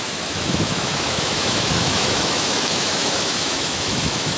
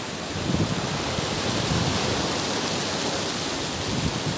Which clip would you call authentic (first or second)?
second